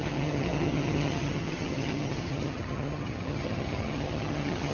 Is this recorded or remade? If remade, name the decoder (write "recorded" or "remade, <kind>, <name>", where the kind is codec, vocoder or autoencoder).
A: remade, vocoder, HiFi-GAN